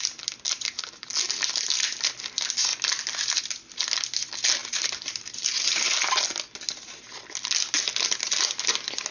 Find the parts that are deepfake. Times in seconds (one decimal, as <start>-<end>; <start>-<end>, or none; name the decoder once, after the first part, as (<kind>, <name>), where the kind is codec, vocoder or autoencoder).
4.6-6.0 (vocoder, BigVGAN v2)